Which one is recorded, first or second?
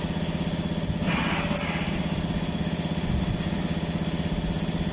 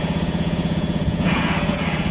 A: first